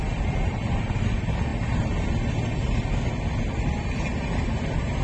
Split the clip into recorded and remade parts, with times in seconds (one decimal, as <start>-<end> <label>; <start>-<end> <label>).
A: 0.0-1.5 remade; 1.5-2.9 recorded; 2.9-5.0 remade